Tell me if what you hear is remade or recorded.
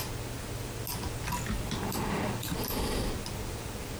recorded